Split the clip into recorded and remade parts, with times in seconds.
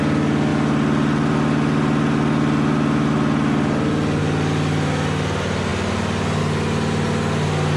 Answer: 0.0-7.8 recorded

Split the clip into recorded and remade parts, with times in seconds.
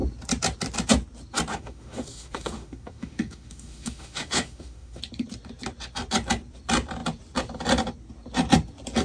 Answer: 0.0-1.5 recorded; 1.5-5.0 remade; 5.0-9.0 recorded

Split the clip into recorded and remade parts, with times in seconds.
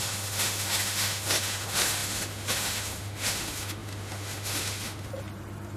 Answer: 0.0-5.1 remade; 5.1-5.8 recorded